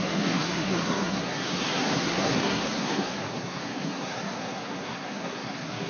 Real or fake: fake